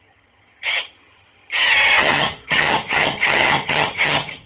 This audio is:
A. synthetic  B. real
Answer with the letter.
A